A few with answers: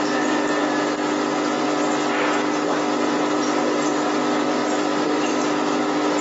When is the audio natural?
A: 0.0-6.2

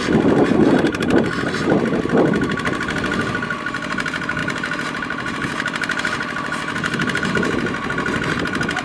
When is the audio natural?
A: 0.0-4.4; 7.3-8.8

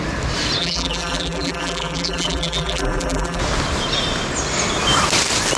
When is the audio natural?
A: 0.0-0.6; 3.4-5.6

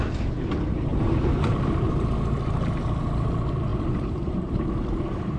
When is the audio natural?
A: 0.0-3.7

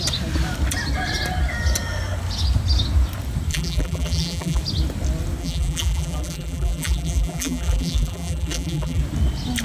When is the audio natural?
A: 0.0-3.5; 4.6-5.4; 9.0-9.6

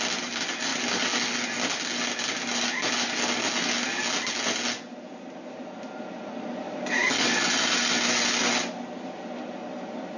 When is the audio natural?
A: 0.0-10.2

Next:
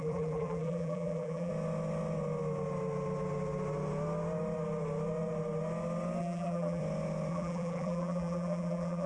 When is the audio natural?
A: 1.5-6.2; 6.8-7.3

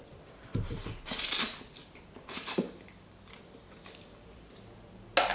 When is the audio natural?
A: 0.0-1.8; 4.5-5.3